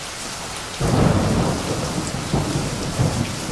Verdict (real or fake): real